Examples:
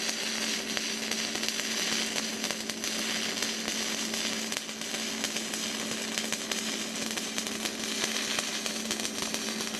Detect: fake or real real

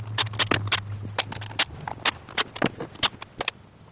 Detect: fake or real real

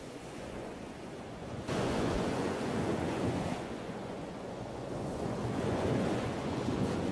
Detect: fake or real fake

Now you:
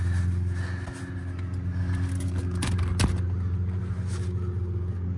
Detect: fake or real real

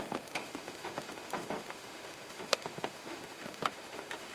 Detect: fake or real fake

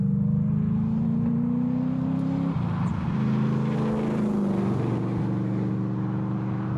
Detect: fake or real real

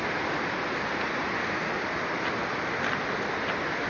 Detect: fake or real real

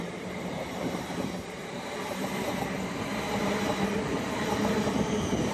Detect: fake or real fake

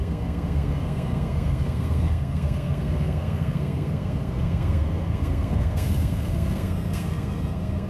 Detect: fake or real fake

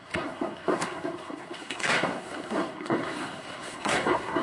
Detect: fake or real fake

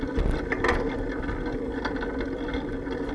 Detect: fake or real real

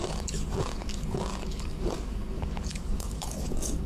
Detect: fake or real fake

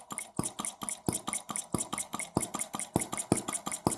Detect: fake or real real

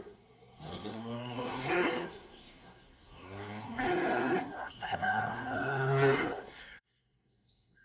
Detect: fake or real fake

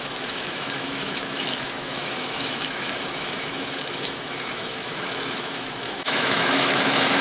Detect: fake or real fake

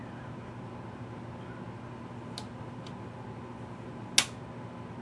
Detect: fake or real real